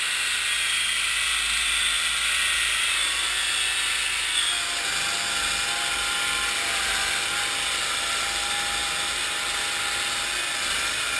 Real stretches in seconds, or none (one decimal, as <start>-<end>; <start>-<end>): 0.0-11.2

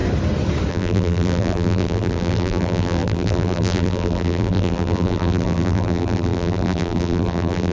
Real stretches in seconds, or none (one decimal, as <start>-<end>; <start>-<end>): 0.0-0.7

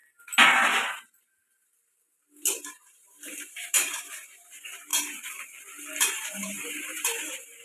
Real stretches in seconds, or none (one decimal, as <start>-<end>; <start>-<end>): 0.0-2.7; 4.9-6.0

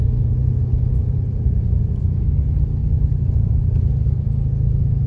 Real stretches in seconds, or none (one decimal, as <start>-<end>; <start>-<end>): 0.0-1.0; 1.8-2.8; 3.5-5.1

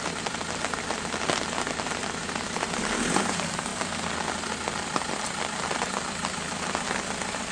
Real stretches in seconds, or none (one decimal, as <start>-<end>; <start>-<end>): 0.0-2.0; 2.7-7.5